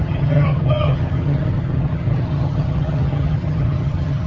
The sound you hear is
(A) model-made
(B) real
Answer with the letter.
A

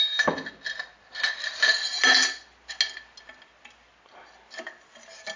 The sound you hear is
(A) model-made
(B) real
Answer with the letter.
B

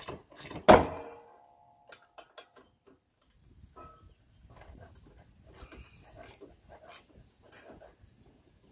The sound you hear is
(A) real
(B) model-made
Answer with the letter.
A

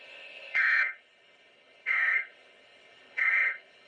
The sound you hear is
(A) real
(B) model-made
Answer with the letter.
B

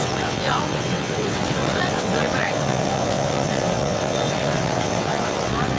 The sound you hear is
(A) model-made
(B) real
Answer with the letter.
A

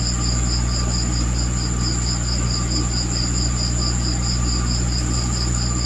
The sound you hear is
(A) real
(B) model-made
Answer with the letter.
A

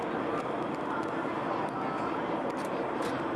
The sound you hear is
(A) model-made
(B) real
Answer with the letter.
B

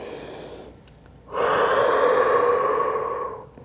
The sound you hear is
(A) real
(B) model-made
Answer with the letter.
A